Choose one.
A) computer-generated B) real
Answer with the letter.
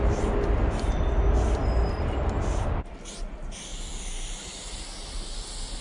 B